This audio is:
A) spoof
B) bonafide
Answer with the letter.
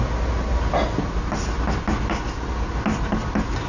B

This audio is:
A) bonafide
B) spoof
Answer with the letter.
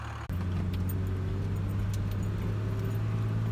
A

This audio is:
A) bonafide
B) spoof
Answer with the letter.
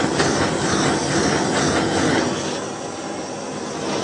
A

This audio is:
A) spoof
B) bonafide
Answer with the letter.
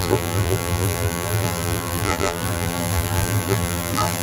A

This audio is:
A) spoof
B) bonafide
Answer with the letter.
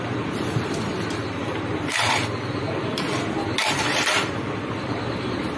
A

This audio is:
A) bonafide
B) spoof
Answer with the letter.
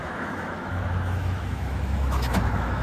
B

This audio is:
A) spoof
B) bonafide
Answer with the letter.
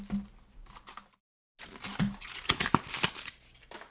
B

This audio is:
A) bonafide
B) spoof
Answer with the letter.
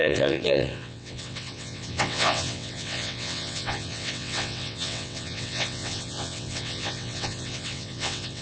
B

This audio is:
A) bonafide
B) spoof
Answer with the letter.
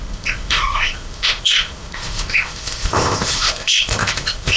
B